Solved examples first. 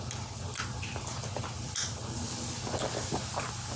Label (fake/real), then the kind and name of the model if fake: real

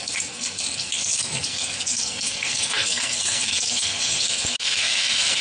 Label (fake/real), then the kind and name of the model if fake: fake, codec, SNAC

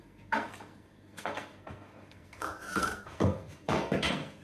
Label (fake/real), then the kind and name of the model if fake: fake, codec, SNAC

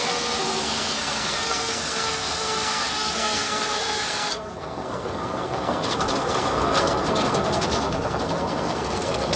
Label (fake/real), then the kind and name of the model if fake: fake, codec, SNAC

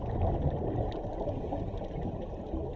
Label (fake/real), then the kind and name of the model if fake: real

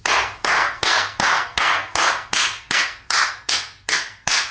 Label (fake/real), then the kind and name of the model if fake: fake, codec, SNAC